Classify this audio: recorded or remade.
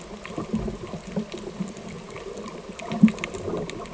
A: recorded